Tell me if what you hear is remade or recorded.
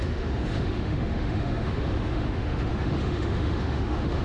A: remade